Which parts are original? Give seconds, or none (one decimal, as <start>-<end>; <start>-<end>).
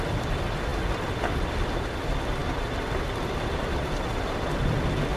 0.0-5.2